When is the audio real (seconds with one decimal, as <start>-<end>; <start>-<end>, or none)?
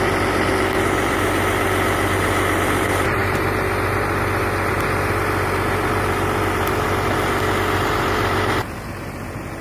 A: 0.0-9.6